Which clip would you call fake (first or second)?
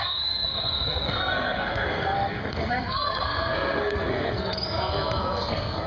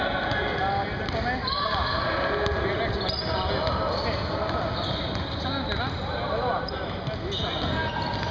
first